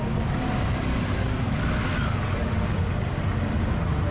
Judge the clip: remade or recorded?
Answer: recorded